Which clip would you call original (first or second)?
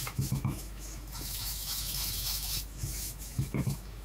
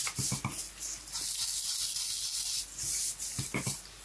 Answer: second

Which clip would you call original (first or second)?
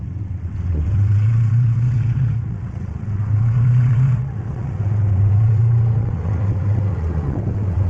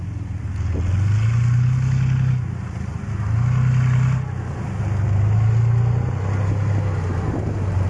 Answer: second